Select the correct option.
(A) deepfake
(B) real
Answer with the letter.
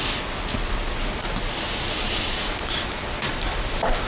B